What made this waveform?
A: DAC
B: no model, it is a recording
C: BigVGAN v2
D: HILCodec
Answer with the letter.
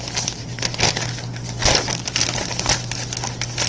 B